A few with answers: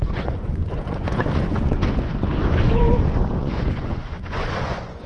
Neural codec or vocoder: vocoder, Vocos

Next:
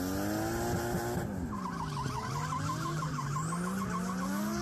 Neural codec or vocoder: none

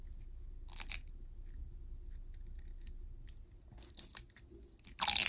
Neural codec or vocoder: none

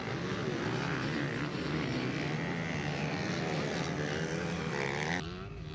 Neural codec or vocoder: none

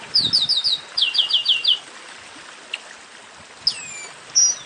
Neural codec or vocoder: none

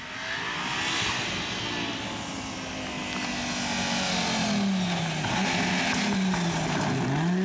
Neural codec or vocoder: none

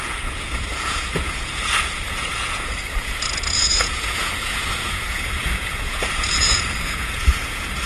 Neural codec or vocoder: vocoder, Vocos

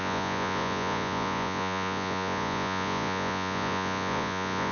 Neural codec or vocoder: vocoder, Vocos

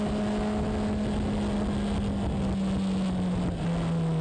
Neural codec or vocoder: none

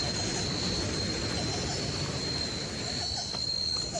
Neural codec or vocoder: none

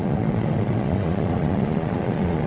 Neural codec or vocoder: vocoder, Vocos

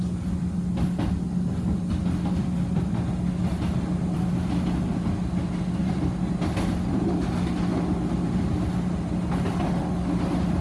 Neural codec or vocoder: none